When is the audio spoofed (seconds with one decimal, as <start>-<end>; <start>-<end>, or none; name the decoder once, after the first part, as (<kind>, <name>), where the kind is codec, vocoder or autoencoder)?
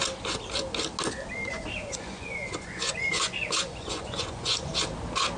1.5-4.7 (vocoder, Vocos)